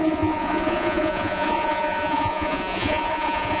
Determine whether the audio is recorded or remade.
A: remade